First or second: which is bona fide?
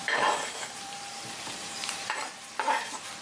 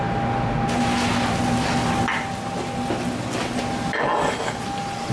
second